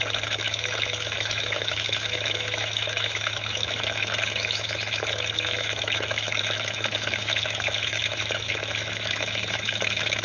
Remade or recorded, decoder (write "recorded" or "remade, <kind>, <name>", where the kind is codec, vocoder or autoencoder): remade, autoencoder, DAC-VAE